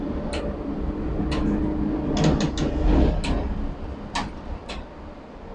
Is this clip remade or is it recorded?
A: recorded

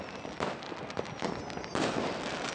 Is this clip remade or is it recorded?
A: recorded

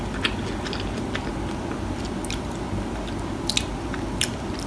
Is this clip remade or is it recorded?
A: recorded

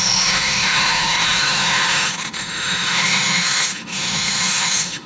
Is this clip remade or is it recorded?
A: remade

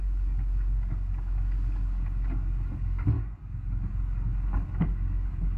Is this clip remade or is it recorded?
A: remade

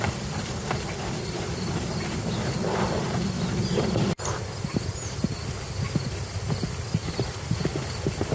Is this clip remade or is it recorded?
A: recorded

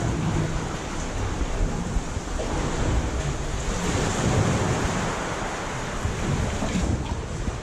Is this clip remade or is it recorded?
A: recorded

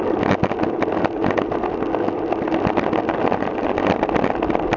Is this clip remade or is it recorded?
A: recorded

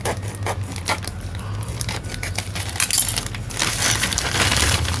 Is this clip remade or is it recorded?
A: recorded